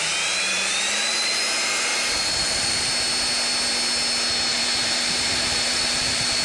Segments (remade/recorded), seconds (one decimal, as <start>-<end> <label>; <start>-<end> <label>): 0.0-1.4 remade; 1.4-1.9 recorded; 1.9-2.9 remade; 2.9-4.5 recorded; 4.5-6.4 remade